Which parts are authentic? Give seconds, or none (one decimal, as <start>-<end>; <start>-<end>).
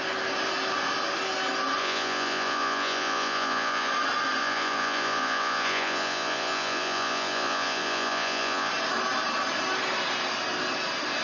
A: 0.0-1.8; 3.9-4.4; 8.7-11.2